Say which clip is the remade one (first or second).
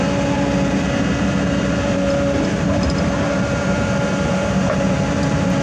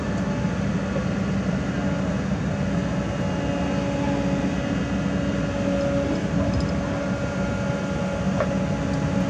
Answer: first